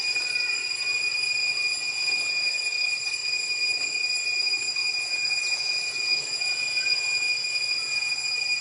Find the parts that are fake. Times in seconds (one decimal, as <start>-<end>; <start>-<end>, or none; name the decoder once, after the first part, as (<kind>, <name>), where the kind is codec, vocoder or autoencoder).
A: 1.4-2.5 (vocoder, Vocos); 4.8-8.2

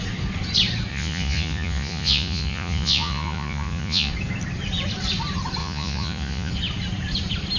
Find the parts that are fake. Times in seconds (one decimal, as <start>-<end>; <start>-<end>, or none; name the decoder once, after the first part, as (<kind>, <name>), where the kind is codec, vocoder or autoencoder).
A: 0.9-4.1 (vocoder, Vocos); 5.6-6.5

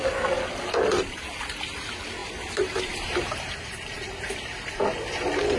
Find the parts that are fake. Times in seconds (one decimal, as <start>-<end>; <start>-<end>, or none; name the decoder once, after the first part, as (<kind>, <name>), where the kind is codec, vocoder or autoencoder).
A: 0.9-1.4 (vocoder, BigVGAN v2); 2.2-5.6

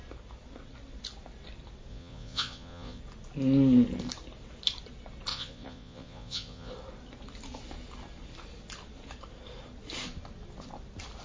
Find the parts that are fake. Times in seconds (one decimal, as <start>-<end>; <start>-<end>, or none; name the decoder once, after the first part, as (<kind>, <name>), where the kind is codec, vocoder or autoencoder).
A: 1.9-3.0 (vocoder, Vocos); 5.3-6.7

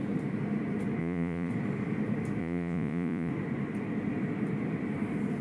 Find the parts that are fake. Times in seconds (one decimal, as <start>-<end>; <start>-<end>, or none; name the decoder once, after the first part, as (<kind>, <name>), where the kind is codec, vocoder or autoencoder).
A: 1.0-1.5 (vocoder, Vocos); 2.4-3.3

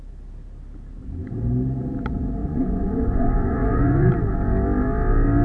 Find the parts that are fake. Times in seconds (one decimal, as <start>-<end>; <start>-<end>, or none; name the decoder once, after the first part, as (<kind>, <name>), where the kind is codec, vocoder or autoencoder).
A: 2.4-4.1 (vocoder, Vocos)